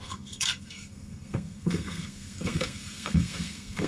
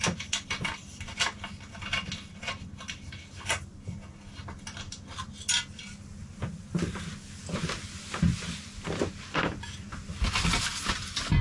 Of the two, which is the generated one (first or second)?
first